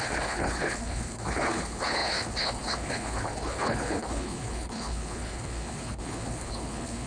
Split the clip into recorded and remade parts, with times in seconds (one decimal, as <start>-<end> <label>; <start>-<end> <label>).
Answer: 0.0-7.1 remade